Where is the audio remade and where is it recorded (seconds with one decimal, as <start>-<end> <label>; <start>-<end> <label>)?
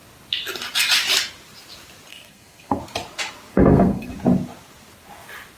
0.0-2.1 recorded; 2.1-2.8 remade; 2.8-3.5 recorded; 3.5-4.1 remade; 4.1-5.6 recorded